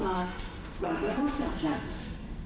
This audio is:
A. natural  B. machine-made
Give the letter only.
B